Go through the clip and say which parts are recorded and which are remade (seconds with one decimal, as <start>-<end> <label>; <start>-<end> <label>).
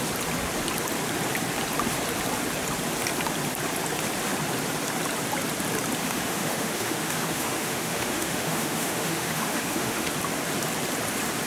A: 0.0-6.0 recorded; 6.0-10.1 remade; 10.1-11.5 recorded